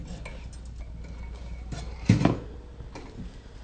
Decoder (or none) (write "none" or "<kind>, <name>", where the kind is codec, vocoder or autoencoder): none